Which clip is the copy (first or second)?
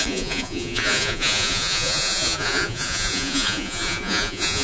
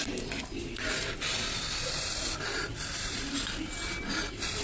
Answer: first